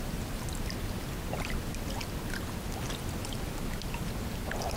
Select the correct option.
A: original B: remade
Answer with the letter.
A